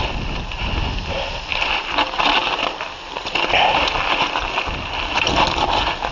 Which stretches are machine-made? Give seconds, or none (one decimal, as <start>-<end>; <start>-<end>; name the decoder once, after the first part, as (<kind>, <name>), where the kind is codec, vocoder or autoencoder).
none